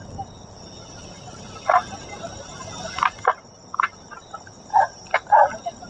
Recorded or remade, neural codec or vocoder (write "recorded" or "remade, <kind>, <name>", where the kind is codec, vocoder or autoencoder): recorded